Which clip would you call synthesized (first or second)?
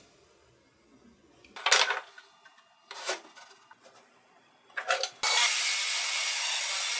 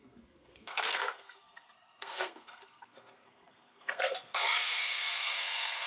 second